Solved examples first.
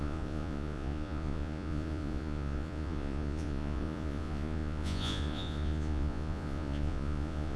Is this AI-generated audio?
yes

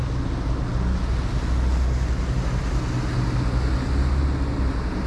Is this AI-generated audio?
no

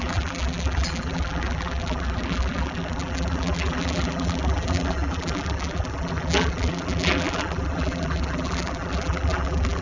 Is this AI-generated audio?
yes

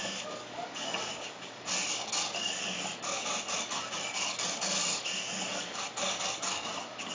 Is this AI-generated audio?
yes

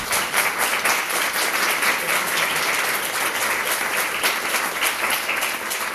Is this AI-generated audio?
no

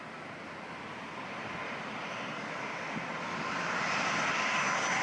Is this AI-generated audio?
no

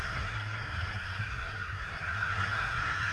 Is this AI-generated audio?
yes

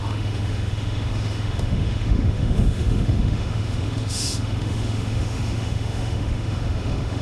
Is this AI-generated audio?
yes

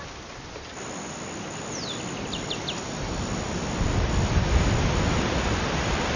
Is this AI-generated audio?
no